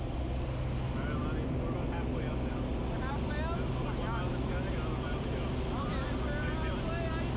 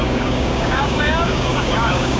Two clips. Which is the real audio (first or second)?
first